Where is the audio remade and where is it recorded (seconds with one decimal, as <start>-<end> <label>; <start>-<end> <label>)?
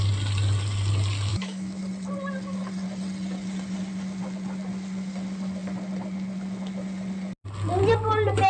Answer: 0.0-1.3 recorded; 1.3-1.8 remade; 1.8-8.5 recorded